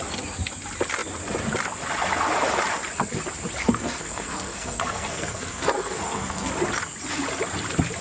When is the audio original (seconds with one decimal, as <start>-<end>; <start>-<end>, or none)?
0.0-3.6; 6.5-8.0